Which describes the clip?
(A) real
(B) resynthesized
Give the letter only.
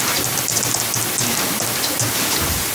A